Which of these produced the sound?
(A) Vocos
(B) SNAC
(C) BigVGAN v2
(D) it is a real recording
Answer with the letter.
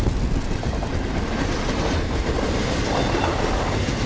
D